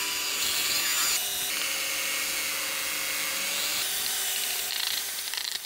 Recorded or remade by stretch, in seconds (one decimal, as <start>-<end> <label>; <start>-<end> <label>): 0.0-3.7 recorded; 3.7-5.7 remade